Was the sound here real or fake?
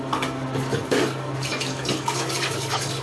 fake